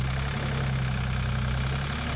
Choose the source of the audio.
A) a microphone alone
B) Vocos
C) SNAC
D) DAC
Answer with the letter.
A